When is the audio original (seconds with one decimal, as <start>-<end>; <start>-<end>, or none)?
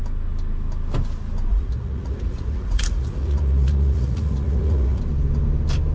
0.0-1.5; 5.0-5.9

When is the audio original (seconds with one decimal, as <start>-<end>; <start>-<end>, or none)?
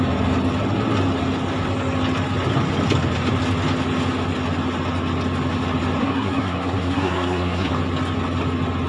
0.0-6.0; 7.7-8.9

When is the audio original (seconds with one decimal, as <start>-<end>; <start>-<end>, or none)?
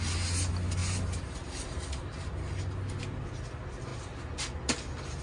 0.0-5.2